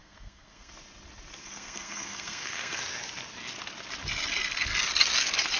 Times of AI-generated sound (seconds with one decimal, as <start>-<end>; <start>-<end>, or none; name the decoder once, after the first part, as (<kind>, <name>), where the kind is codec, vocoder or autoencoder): 0.0-0.7 (codec, SNAC); 1.4-2.8